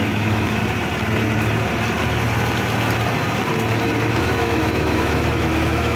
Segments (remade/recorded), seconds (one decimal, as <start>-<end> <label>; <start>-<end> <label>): 0.0-0.6 remade; 0.6-4.2 recorded; 4.2-6.0 remade